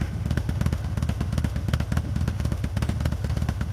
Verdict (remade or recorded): remade